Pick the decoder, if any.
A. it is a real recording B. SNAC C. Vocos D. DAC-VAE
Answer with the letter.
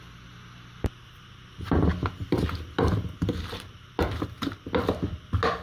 A